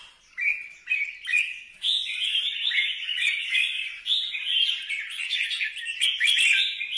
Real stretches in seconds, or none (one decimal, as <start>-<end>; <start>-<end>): 0.0-1.3; 2.4-3.2; 4.0-7.0